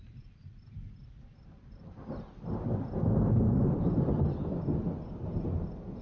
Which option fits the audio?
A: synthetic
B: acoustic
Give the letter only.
B